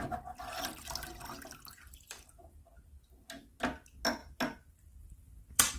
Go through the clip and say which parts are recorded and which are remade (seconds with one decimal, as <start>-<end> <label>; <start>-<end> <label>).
0.0-1.7 recorded; 1.7-2.6 remade; 2.6-4.2 recorded; 4.2-5.8 remade